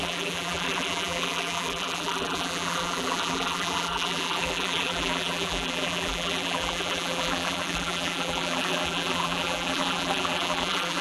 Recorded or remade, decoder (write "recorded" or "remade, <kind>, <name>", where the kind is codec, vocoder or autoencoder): remade, vocoder, BigVGAN v2